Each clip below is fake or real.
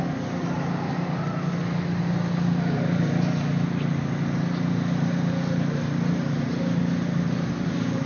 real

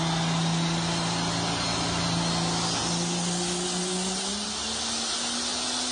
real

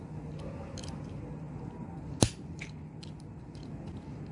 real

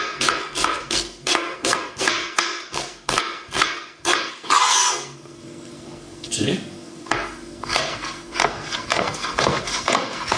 fake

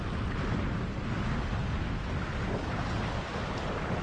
real